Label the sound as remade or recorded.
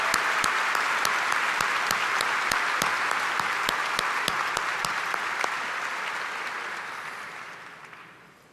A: recorded